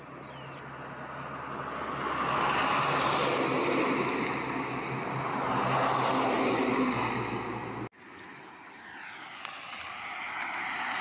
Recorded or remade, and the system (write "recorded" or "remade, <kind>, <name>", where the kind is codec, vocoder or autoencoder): recorded